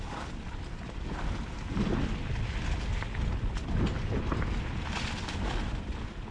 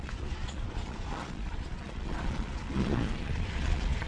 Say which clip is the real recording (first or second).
first